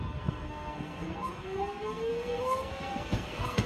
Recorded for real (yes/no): no